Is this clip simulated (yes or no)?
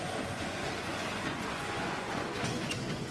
yes